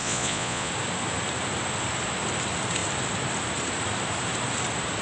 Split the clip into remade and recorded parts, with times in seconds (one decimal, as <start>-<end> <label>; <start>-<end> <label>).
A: 0.0-0.7 remade; 0.7-5.0 recorded